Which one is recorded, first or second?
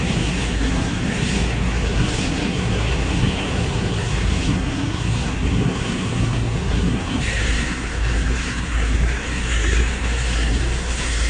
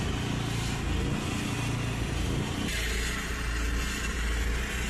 second